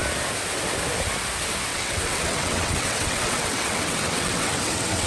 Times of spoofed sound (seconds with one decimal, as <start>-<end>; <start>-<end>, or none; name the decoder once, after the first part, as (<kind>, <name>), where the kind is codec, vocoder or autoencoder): 1.7-5.1 (vocoder, WaveNeXt)

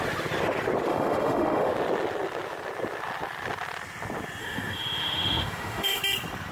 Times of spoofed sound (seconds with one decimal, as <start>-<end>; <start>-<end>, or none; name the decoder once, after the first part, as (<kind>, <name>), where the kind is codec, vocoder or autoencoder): 0.9-1.7 (autoencoder, DAC-VAE); 4.4-6.0

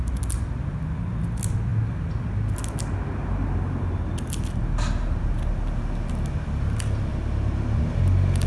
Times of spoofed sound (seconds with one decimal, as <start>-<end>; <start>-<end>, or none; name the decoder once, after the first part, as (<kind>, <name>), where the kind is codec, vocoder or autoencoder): none

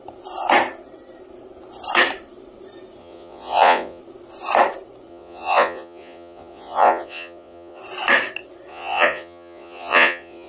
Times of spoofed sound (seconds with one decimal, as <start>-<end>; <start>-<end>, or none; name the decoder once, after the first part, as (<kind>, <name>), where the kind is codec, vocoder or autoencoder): 3.0-4.0 (vocoder, Vocos); 5.1-7.8; 8.7-10.5